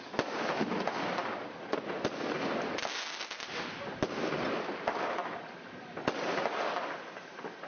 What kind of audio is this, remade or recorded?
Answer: recorded